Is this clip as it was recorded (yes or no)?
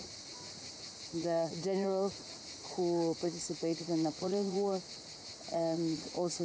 no